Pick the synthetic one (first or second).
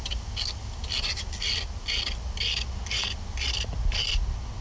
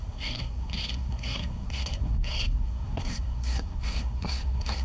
second